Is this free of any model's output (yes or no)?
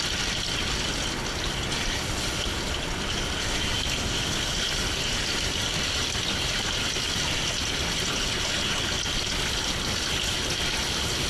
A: yes